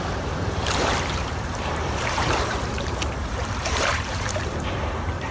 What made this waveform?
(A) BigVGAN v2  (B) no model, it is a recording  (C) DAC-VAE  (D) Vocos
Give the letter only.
A